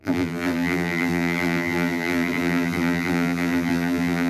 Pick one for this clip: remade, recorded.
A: remade